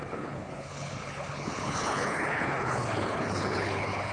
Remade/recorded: remade